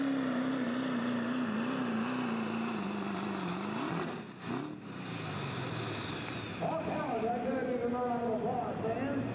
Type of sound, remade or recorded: recorded